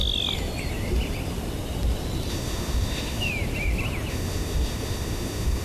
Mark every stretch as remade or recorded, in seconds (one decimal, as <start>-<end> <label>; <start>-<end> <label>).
0.0-2.3 recorded; 2.3-3.3 remade; 3.3-4.1 recorded; 4.1-5.6 remade